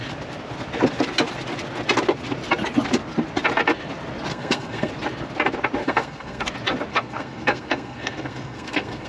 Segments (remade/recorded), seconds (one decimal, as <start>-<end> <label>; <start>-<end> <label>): 0.0-4.3 recorded; 4.3-4.9 remade; 4.9-5.8 recorded; 5.8-6.4 remade; 6.4-6.9 recorded; 6.9-9.1 remade